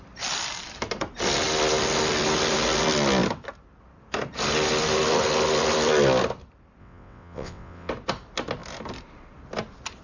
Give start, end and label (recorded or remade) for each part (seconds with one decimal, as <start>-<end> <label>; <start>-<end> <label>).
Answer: 0.0-6.8 recorded; 6.8-7.9 remade; 7.9-10.0 recorded